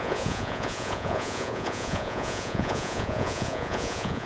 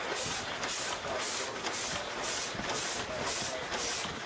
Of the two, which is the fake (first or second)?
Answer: first